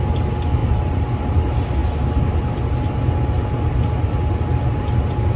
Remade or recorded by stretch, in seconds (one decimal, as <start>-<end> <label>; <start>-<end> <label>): 0.0-5.4 recorded